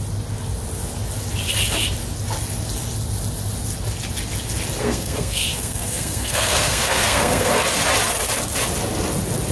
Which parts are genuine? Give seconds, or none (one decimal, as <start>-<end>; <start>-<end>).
0.0-4.8; 7.5-9.5

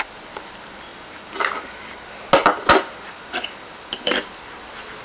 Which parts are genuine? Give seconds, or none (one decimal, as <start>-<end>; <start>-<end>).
0.9-3.9

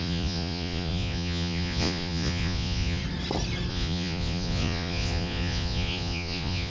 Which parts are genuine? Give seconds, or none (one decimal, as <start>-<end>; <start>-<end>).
3.0-3.7